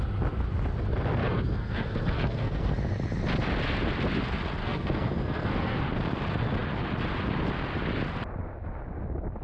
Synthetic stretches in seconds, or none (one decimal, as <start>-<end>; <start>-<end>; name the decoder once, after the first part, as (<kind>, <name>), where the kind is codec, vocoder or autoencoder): 1.2-2.7 (codec, SNAC); 4.6-5.8